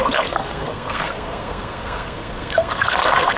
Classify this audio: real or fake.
fake